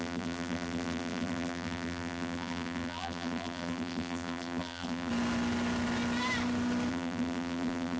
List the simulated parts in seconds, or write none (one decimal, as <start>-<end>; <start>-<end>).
0.0-5.1; 6.9-8.0